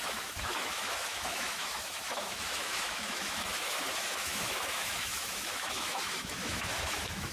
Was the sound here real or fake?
fake